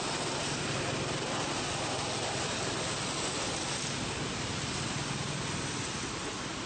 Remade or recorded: recorded